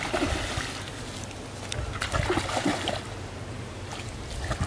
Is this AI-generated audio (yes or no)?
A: no